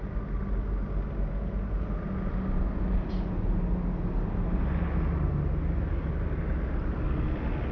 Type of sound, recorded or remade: recorded